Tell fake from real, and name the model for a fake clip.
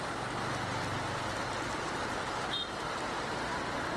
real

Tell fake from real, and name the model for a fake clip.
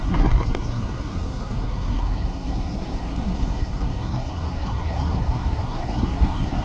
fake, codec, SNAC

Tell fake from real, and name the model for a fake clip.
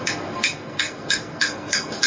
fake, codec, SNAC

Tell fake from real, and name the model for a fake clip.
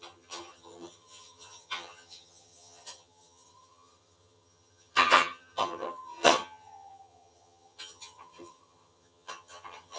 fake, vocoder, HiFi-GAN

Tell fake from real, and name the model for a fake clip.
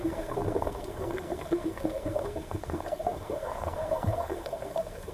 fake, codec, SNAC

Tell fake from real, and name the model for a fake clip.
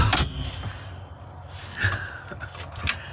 real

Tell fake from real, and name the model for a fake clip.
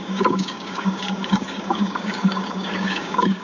fake, codec, DAC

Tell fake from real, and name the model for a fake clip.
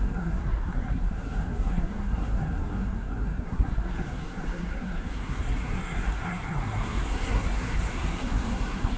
fake, codec, SNAC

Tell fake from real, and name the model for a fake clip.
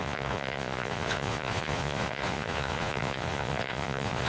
fake, vocoder, Vocos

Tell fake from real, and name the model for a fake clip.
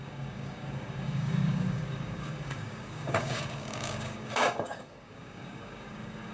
fake, codec, DAC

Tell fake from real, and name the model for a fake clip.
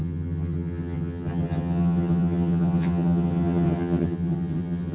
fake, vocoder, HiFi-GAN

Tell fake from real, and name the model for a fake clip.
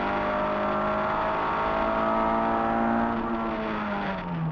real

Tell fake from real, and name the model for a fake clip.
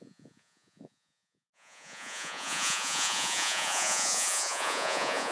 fake, vocoder, Vocos